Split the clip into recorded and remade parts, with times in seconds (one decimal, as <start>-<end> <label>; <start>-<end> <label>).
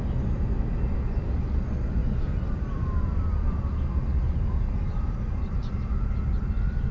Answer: 0.0-2.0 recorded; 2.0-6.1 remade; 6.1-6.9 recorded